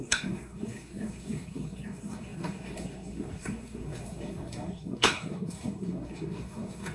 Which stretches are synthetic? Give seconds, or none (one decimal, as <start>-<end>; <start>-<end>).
0.0-6.9